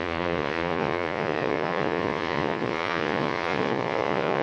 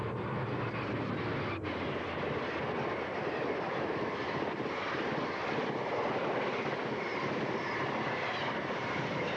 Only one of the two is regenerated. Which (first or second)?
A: first